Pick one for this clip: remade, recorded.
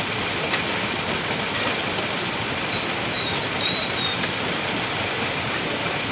recorded